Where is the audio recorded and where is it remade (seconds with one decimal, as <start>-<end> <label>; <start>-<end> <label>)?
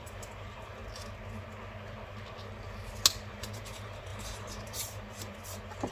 0.0-0.8 remade; 0.8-3.3 recorded; 3.3-5.9 remade